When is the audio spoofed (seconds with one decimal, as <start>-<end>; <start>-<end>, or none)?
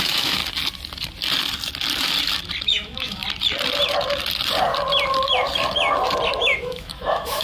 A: 0.0-0.4; 2.6-3.2; 6.3-7.4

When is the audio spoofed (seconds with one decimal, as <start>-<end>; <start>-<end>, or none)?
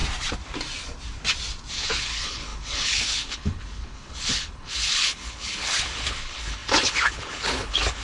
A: 1.7-8.0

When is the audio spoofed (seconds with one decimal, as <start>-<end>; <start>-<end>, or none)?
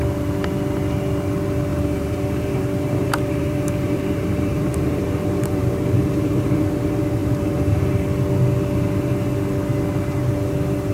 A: 1.7-6.5; 7.2-7.9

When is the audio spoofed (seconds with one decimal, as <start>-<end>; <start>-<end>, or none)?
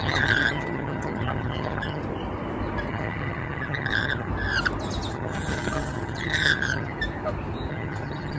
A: 0.0-2.0; 2.9-4.3; 5.1-6.9; 7.7-8.4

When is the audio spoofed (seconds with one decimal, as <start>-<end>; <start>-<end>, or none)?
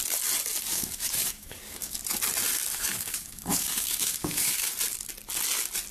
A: 0.7-2.0; 2.7-4.7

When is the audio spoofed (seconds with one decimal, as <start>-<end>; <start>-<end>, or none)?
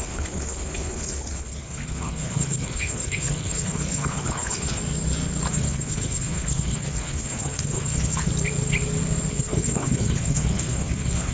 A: 0.0-4.8; 5.5-8.3; 9.3-11.3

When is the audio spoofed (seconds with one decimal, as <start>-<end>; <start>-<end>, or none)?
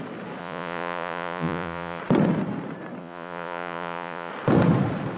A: 0.4-2.0; 3.0-4.3